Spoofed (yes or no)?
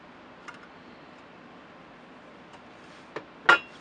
no